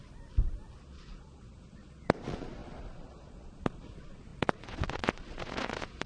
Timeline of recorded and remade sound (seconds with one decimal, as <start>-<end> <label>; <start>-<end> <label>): 0.0-0.8 recorded; 0.8-6.1 remade